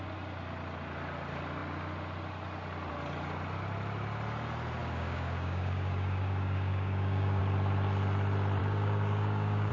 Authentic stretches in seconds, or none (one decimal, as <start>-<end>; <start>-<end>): 0.0-4.8; 7.4-8.6